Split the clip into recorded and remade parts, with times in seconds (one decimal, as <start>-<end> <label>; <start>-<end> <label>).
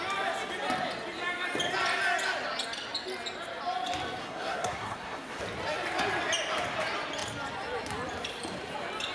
0.0-4.2 recorded; 4.2-5.4 remade; 5.4-9.1 recorded